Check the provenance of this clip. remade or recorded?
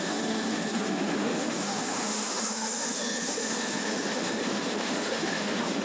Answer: remade